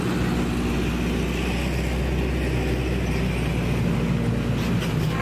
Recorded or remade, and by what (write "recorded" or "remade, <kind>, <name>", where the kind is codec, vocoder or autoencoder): recorded